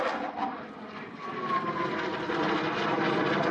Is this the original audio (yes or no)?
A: yes